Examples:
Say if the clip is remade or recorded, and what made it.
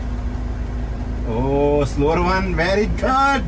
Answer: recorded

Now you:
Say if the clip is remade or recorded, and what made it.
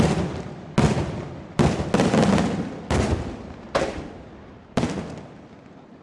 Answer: recorded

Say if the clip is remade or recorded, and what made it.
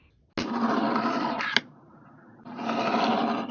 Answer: recorded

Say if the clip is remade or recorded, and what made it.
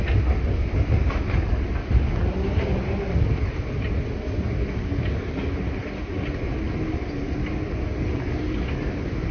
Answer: recorded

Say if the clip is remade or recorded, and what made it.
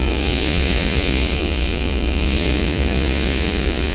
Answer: remade, vocoder, Vocos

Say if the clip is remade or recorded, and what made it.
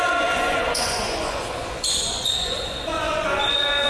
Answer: remade, vocoder, Vocos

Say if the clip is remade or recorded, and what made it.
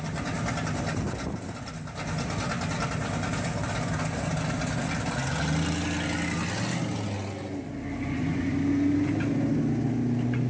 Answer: recorded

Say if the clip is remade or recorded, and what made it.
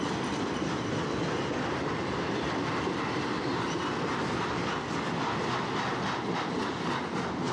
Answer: recorded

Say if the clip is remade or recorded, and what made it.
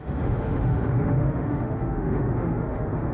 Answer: remade, autoencoder, DAC-VAE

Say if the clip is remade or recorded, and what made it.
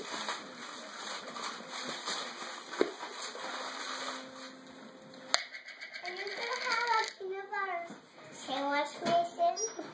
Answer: recorded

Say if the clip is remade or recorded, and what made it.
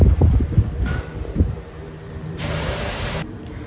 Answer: remade, vocoder, BigVGAN v2